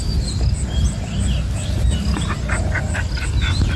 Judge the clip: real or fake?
real